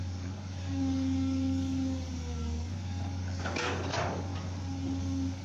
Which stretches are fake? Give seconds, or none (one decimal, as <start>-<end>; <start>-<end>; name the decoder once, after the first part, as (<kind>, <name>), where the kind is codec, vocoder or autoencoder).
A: 0.0-4.3 (codec, DAC); 5.0-5.4